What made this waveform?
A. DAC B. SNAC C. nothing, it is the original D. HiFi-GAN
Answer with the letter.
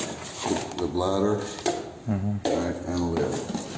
C